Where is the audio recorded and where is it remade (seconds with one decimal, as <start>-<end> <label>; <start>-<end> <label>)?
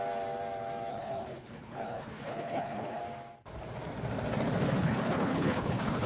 0.0-0.9 recorded; 0.9-3.0 remade; 3.0-4.8 recorded; 4.8-6.1 remade